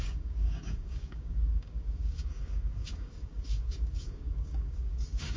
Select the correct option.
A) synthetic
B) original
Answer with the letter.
A